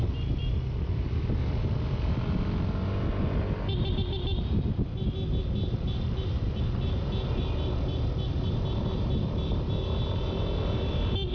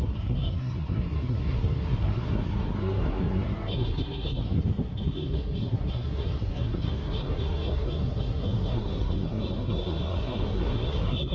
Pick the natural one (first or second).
first